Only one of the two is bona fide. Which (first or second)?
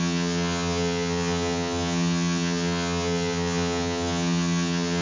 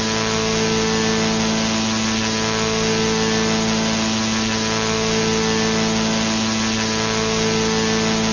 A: second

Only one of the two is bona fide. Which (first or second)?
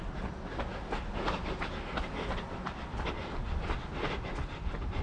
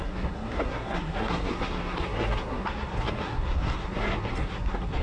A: first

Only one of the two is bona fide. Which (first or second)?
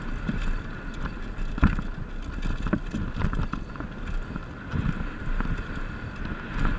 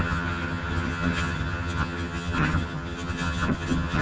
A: first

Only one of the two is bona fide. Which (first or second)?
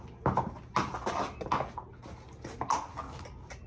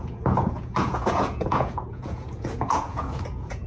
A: first